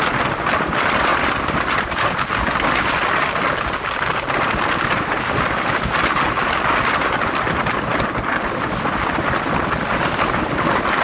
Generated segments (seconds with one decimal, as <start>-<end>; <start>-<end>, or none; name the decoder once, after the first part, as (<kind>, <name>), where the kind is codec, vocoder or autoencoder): none